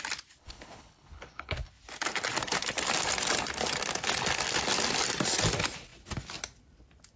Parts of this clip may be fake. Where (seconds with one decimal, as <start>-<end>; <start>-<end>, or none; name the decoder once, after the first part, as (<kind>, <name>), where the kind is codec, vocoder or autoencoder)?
0.4-1.7 (codec, HILCodec)